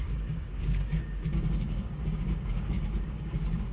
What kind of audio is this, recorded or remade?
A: remade